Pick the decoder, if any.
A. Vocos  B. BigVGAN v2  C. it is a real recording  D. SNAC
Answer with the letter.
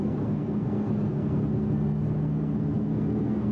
D